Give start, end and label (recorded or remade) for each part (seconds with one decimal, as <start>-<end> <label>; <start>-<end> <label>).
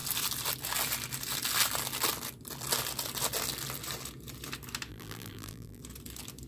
0.0-4.9 recorded; 4.9-5.8 remade; 5.8-6.5 recorded